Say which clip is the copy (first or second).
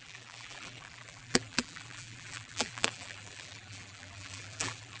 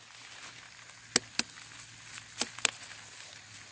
first